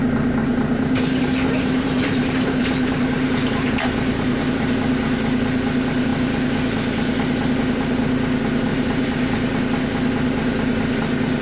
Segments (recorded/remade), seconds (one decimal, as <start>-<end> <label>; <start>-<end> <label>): 0.0-0.4 recorded; 0.4-4.4 remade; 4.4-8.7 recorded; 8.7-9.6 remade; 9.6-11.4 recorded